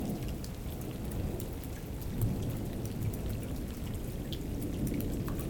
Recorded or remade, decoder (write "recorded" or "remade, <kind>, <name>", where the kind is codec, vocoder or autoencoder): recorded